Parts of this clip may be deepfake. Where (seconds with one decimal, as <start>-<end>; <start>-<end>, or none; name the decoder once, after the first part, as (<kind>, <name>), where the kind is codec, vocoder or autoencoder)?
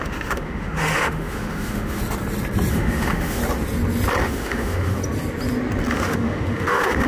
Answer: 0.0-2.0 (autoencoder, DAC-VAE); 2.7-3.4; 4.2-5.0; 5.9-7.1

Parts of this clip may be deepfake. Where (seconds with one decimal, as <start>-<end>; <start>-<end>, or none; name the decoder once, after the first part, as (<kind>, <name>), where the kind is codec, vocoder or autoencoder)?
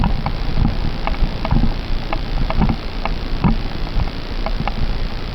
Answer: none